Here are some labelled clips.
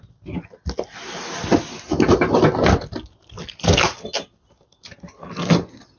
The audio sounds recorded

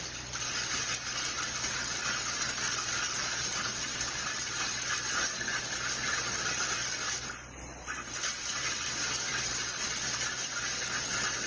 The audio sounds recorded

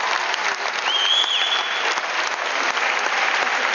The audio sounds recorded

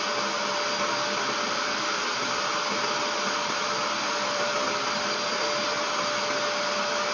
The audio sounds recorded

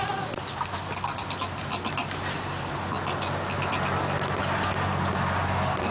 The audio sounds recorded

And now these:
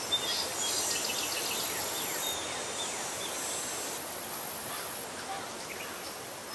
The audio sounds recorded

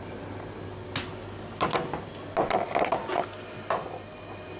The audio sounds recorded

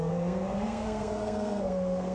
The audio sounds remade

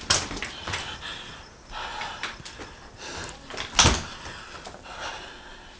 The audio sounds recorded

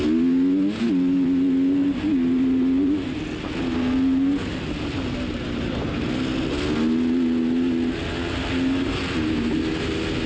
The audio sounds recorded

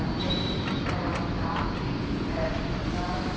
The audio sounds recorded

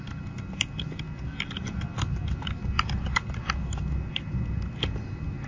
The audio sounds recorded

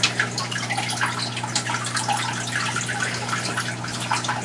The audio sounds recorded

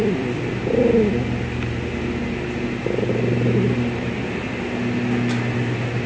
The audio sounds recorded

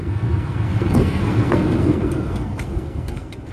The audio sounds remade